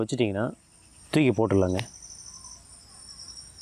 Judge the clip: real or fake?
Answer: real